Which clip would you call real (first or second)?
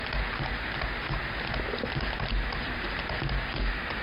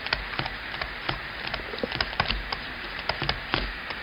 first